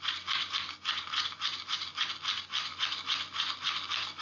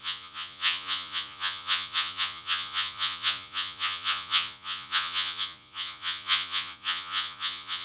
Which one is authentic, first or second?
first